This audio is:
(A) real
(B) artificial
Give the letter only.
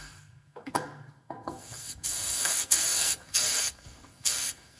B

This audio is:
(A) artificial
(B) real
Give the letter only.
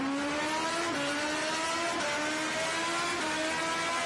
B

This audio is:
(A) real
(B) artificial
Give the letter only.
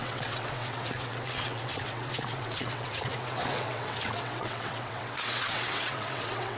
B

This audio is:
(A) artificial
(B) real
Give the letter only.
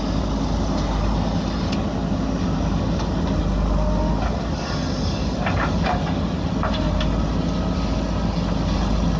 B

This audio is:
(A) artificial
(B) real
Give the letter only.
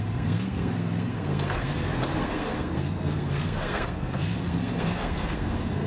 A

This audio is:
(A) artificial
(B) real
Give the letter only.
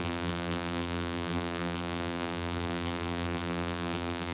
A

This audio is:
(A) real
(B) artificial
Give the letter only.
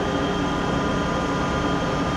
A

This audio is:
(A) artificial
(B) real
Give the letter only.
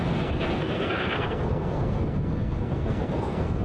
A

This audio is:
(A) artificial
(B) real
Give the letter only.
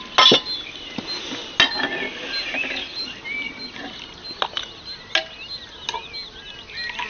B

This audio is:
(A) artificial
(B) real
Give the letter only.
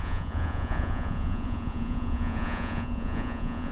A